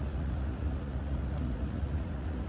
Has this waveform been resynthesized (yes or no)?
yes